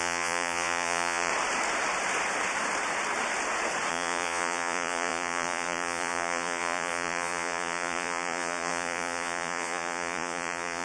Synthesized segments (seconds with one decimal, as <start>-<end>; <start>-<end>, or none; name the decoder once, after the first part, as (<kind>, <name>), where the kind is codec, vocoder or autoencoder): 0.0-1.3 (vocoder, Vocos); 3.9-10.8